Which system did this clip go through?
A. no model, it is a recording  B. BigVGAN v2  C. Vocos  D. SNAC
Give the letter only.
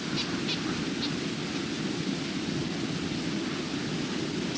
A